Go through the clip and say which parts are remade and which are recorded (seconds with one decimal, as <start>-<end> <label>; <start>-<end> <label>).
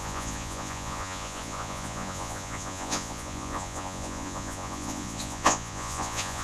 0.0-6.4 remade